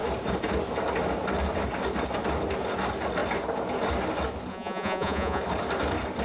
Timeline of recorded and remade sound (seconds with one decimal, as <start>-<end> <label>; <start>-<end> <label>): 0.0-4.5 recorded; 4.5-5.4 remade; 5.4-6.2 recorded